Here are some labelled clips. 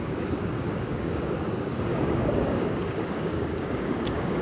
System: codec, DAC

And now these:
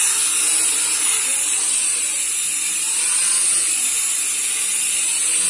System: vocoder, BigVGAN v2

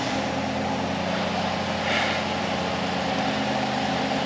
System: none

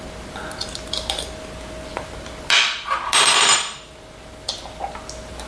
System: none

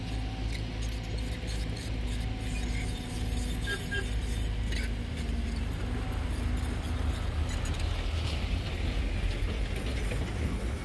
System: none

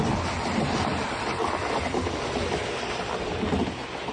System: none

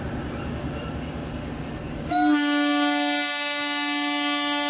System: none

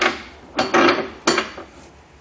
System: none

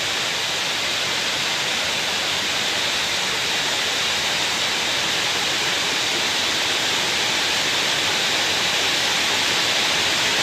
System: none